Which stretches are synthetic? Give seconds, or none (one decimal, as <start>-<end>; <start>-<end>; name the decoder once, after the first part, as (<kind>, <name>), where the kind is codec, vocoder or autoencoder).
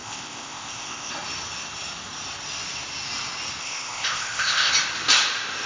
0.0-1.1 (codec, ZipCodec); 3.6-4.7